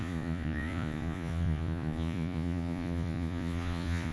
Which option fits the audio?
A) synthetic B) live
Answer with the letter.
A